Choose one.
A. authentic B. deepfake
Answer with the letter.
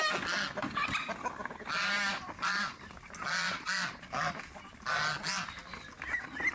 A